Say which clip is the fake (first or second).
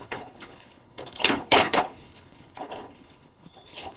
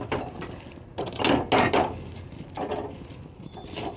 first